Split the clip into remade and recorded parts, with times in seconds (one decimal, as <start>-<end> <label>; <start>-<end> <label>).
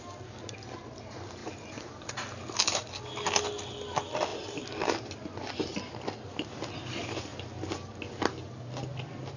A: 0.0-1.4 recorded; 1.4-2.1 remade; 2.1-4.3 recorded; 4.3-5.0 remade; 5.0-7.3 recorded; 7.3-8.1 remade; 8.1-9.4 recorded